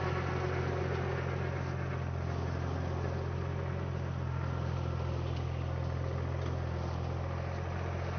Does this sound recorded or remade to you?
recorded